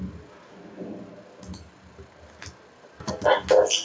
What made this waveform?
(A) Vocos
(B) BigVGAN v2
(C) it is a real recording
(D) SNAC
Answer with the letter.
C